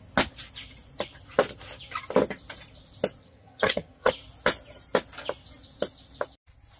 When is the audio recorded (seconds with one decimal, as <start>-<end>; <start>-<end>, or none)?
0.0-3.2; 4.1-6.8